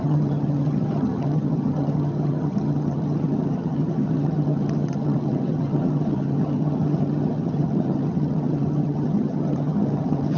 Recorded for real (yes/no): no